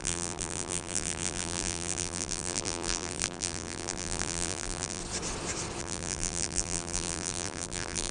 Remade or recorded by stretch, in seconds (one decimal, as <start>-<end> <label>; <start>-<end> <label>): 0.0-5.0 remade; 5.0-5.8 recorded; 5.8-8.1 remade